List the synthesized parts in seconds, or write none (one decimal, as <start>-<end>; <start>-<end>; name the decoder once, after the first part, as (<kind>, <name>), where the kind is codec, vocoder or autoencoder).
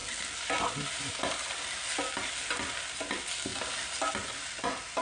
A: none